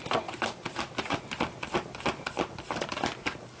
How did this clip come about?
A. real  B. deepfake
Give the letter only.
A